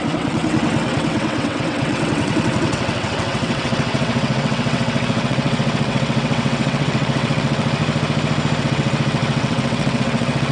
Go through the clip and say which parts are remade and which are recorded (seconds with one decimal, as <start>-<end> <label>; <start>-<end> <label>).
0.0-7.8 remade; 7.8-8.6 recorded; 8.6-10.5 remade